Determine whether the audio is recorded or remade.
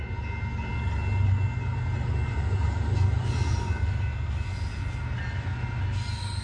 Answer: recorded